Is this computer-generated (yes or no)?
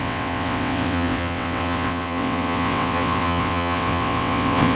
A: yes